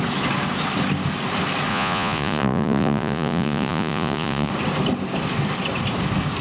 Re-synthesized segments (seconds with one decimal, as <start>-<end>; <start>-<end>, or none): 1.7-4.5